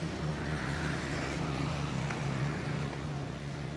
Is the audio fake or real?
fake